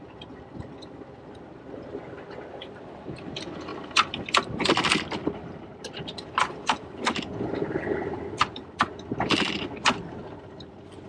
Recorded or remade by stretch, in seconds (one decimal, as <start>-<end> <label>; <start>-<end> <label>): 0.0-3.7 recorded; 3.7-8.8 remade; 8.8-11.1 recorded